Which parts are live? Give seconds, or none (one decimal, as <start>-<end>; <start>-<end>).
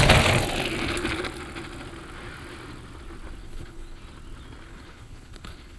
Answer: 0.0-3.4; 4.0-4.7